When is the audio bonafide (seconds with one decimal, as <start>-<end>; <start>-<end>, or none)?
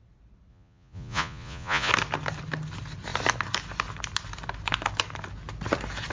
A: 0.0-0.5; 1.9-6.1